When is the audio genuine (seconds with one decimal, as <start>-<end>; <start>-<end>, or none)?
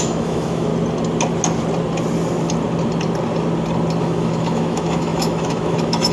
0.7-4.0